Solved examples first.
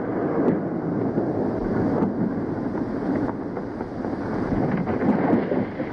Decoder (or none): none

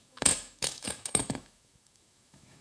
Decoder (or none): autoencoder, DAC-VAE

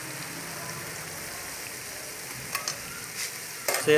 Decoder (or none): none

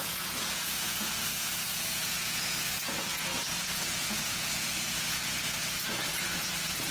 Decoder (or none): vocoder, Vocos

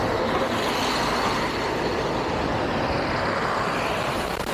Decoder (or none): none